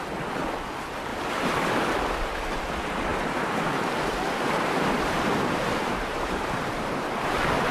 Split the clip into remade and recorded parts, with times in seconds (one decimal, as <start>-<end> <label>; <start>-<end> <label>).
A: 0.0-1.1 recorded; 1.1-1.7 remade; 1.7-3.1 recorded; 3.1-7.0 remade; 7.0-7.7 recorded